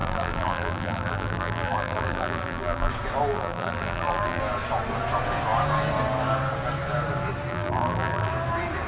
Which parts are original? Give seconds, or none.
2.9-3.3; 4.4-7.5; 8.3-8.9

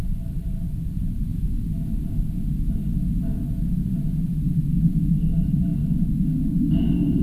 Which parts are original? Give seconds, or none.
1.3-5.1; 5.7-7.2

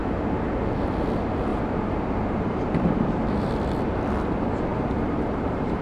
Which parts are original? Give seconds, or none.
0.0-1.5; 3.5-4.7

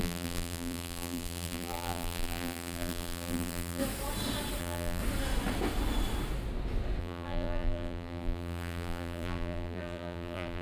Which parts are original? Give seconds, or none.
3.8-4.6; 5.0-7.0

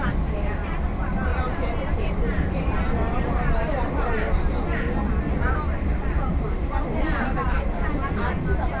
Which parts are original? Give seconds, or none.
0.0-1.3; 4.5-8.8

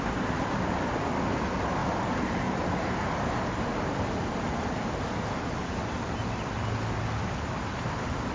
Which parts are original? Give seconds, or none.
0.0-1.8; 2.9-3.7; 5.8-8.3

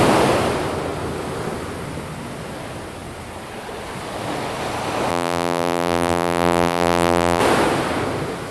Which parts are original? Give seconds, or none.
0.0-5.1; 7.4-8.5